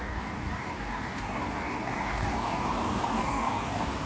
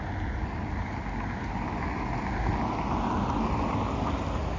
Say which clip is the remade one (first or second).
first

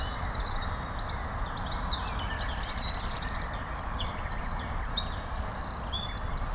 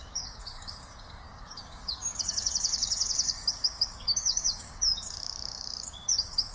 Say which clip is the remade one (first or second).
second